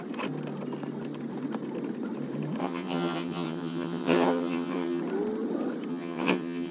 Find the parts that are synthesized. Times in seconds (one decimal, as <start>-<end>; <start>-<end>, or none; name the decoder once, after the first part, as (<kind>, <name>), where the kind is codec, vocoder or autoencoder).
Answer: 2.6-5.0 (vocoder, HiFi-GAN); 5.9-6.7

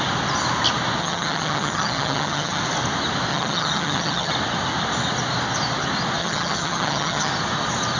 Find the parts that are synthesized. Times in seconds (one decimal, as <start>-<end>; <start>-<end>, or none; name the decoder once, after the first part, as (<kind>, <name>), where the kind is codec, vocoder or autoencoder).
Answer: 1.0-2.6 (vocoder, HiFi-GAN); 3.3-4.3; 6.2-7.3

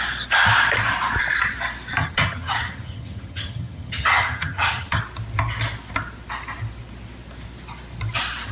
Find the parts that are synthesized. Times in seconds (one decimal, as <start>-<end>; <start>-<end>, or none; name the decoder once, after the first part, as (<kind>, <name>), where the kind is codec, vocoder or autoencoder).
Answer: 2.0-5.0 (vocoder, HiFi-GAN)

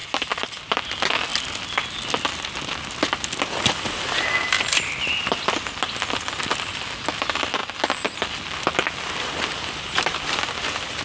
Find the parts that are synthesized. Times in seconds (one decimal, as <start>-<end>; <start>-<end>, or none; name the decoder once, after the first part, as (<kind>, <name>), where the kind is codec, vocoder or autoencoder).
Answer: none

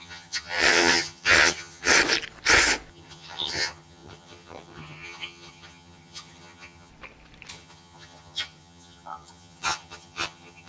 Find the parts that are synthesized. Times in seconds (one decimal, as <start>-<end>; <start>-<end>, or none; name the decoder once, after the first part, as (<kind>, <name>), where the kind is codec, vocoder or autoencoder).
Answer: 0.0-1.9 (vocoder, HiFi-GAN); 2.9-6.9; 7.5-10.7

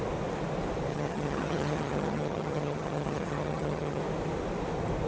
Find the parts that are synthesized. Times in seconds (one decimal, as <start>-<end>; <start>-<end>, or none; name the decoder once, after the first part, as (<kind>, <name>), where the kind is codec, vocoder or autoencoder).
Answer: 0.9-4.0 (vocoder, HiFi-GAN)

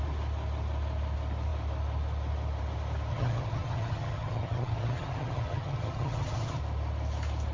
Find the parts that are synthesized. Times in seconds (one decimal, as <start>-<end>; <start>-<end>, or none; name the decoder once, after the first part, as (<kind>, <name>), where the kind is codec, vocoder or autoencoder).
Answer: 3.1-6.6 (vocoder, HiFi-GAN)